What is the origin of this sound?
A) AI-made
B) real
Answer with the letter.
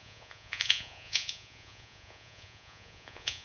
A